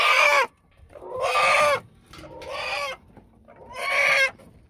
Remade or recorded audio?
recorded